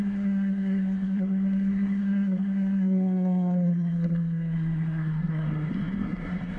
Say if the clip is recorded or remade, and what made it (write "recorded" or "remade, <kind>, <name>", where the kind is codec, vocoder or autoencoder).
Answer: remade, codec, SNAC